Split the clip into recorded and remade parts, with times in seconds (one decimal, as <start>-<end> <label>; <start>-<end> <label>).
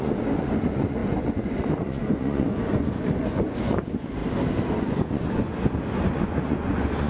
0.0-4.2 remade; 4.2-4.8 recorded; 4.8-5.5 remade; 5.5-6.1 recorded; 6.1-7.1 remade